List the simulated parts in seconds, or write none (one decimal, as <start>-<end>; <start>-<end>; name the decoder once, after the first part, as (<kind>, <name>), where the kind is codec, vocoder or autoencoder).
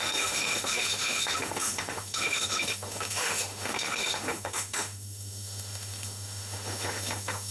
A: 0.0-7.5 (autoencoder, DAC-VAE)